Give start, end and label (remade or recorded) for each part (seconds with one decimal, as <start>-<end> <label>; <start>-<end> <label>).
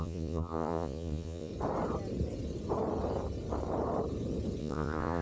0.0-1.5 remade; 1.5-4.6 recorded; 4.6-5.2 remade